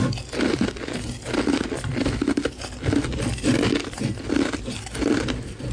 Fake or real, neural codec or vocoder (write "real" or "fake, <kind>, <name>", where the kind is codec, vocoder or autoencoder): real